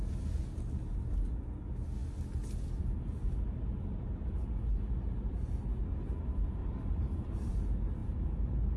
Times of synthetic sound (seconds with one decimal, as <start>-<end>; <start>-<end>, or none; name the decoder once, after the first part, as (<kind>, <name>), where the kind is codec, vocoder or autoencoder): 6.6-7.5 (vocoder, BigVGAN v2); 8.0-8.8

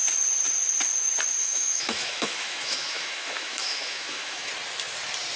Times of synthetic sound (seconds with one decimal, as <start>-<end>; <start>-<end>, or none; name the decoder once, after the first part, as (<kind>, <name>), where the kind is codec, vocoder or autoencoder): 1.4-4.5 (autoencoder, DAC-VAE)

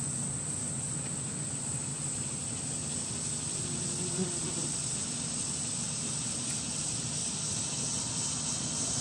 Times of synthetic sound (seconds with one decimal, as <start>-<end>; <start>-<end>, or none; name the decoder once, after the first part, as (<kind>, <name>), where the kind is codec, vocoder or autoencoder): none

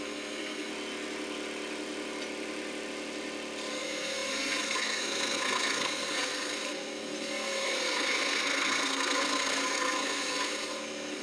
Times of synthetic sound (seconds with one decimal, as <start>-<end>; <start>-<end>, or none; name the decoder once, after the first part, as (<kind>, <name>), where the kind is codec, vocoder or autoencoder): 0.0-0.7 (codec, SNAC); 3.7-11.2

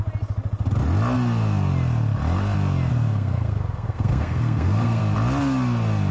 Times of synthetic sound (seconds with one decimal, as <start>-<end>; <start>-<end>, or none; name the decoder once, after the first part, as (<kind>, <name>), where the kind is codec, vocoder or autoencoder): 2.9-5.0 (codec, SNAC)

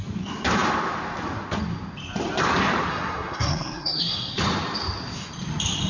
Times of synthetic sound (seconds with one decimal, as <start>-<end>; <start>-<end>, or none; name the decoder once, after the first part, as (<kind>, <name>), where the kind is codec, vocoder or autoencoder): 2.9-4.3 (codec, SNAC)